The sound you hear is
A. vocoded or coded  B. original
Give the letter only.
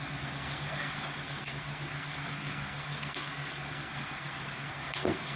A